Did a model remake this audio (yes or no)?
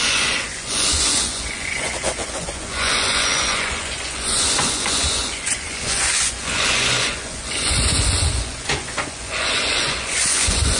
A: yes